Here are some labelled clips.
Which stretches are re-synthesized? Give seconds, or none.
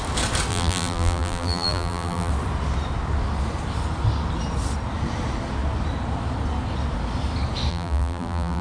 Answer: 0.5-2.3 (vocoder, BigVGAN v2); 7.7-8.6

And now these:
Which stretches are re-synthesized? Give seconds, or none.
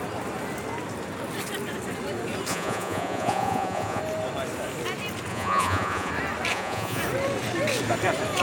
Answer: 2.5-4.0 (vocoder, Vocos); 5.3-6.1; 6.5-7.0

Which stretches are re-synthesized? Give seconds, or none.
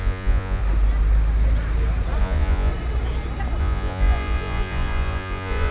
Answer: 0.0-0.6 (vocoder, Vocos); 2.2-2.7; 3.6-5.7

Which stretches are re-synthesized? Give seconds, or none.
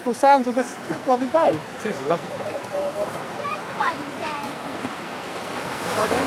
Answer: 0.0-6.3 (codec, SNAC)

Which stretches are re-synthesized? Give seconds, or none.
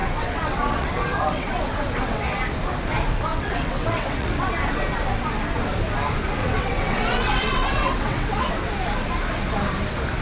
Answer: 0.0-2.2 (vocoder, WaveNeXt); 3.3-4.5; 6.4-8.5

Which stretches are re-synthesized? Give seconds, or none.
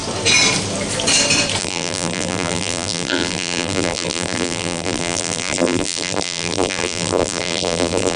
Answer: 1.6-8.2 (vocoder, BigVGAN v2)